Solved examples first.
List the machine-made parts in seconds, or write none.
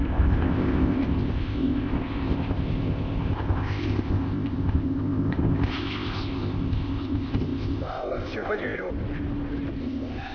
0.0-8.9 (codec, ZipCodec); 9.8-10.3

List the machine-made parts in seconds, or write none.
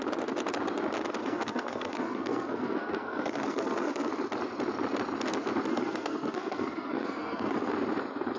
1.2-4.1 (codec, SNAC); 5.7-7.7